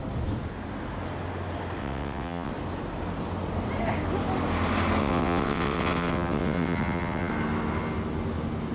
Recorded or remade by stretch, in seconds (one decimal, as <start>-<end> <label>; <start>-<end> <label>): 0.0-1.8 recorded; 1.8-2.5 remade; 2.5-5.0 recorded; 5.0-7.3 remade; 7.3-8.7 recorded